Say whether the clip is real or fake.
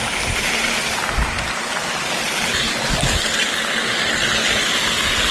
real